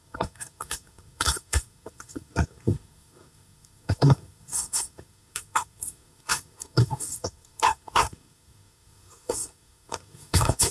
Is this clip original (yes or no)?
no